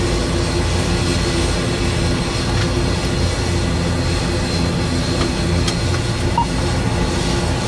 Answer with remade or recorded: recorded